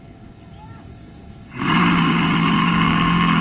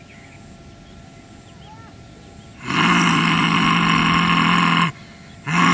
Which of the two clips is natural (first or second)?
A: second